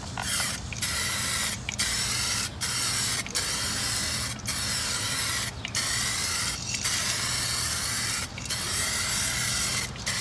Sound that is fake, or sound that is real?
real